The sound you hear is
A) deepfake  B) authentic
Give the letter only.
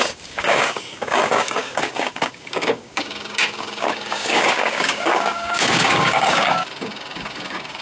A